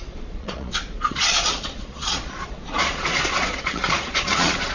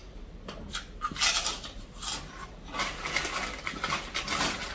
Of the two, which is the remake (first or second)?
first